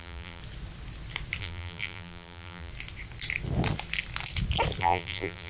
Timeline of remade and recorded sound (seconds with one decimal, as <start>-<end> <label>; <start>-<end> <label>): 0.0-0.4 remade; 0.4-1.4 recorded; 1.4-2.7 remade; 2.7-4.8 recorded; 4.8-5.5 remade